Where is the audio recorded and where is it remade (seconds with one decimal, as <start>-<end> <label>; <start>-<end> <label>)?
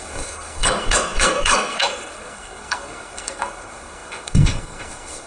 0.0-5.3 remade